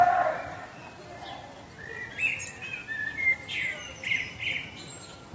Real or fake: real